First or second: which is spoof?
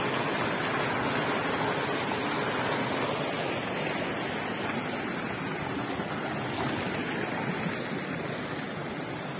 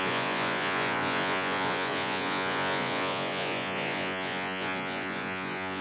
second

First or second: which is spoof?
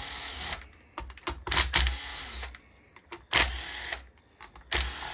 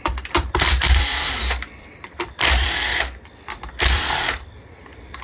second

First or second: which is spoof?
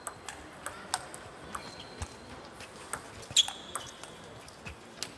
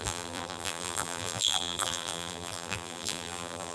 second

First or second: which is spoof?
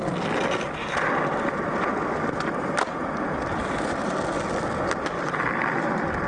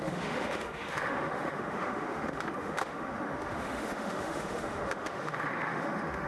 second